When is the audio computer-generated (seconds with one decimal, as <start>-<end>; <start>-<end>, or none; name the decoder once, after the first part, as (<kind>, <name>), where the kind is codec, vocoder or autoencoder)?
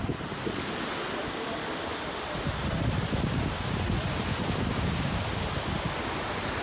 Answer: none